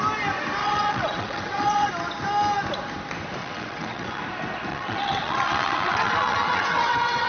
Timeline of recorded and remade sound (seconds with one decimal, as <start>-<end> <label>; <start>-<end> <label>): 0.0-0.6 recorded; 0.6-1.9 remade; 1.9-3.4 recorded; 3.4-4.2 remade; 4.2-4.7 recorded; 4.7-7.3 remade